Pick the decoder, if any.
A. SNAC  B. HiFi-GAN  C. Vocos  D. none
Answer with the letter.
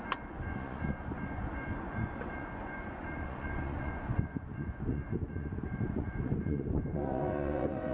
C